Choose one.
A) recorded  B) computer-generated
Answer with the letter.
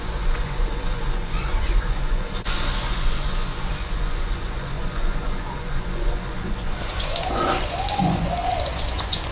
B